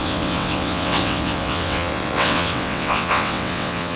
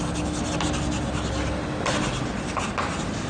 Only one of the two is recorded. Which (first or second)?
second